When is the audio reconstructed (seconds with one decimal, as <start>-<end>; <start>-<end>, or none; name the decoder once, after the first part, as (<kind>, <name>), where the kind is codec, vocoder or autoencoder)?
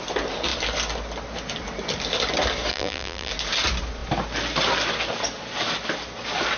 2.7-3.3 (vocoder, BigVGAN v2)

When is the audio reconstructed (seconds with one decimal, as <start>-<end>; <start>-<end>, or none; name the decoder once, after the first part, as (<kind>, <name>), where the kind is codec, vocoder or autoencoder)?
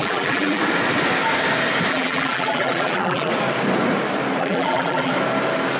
0.0-0.6 (vocoder, BigVGAN v2); 1.9-3.3; 4.4-5.1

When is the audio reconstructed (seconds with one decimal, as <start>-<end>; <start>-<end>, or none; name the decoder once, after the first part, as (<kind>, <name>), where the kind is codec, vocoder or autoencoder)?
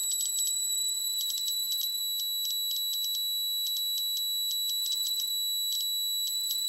0.0-2.0 (vocoder, BigVGAN v2); 4.8-5.3; 6.3-6.7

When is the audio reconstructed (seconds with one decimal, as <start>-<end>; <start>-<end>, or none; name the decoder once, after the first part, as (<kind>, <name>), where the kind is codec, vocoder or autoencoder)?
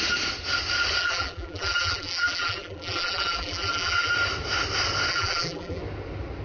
1.0-4.1 (vocoder, BigVGAN v2); 5.1-5.8